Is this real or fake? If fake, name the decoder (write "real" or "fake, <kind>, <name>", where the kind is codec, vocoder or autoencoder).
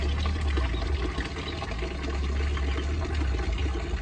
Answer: real